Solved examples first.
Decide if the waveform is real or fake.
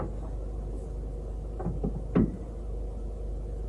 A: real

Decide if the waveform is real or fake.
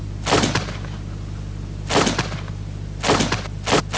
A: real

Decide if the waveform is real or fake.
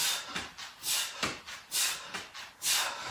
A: real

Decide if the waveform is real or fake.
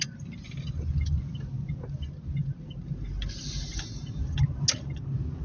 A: real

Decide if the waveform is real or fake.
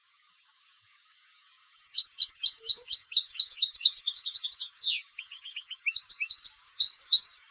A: fake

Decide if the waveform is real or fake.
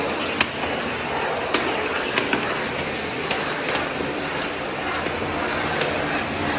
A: real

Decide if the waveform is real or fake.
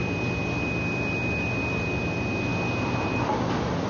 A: real